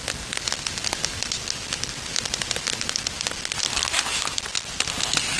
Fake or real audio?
real